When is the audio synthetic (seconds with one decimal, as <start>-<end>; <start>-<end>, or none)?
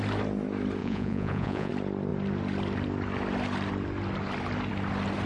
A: 0.8-1.7